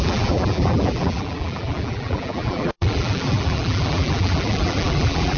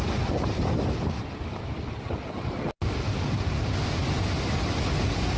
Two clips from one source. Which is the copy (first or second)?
first